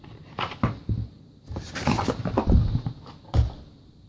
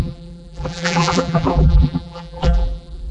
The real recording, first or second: first